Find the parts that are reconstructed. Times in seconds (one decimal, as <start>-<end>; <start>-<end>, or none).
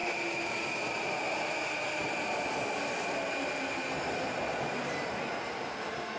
none